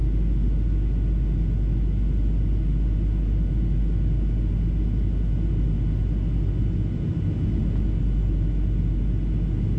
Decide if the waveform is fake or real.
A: real